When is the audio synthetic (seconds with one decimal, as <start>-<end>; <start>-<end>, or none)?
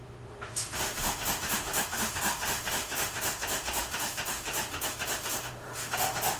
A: 0.0-6.4